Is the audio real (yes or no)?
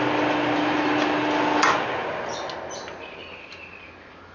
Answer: yes